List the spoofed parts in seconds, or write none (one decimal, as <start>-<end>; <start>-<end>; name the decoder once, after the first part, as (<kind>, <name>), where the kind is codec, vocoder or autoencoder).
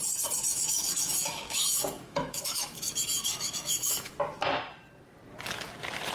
0.5-4.2 (autoencoder, DAC-VAE)